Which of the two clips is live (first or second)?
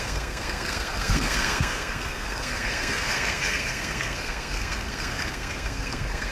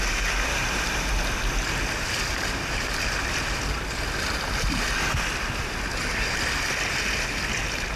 second